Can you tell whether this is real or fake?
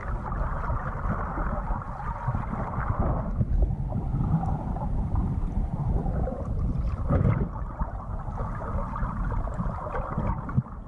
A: real